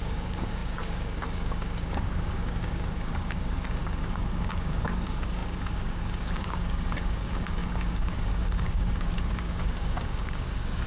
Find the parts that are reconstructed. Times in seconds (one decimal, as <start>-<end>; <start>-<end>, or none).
0.0-10.9